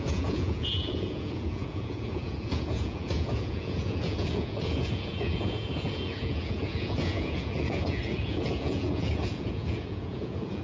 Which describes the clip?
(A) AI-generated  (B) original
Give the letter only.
A